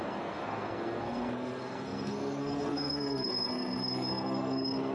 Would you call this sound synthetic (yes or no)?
yes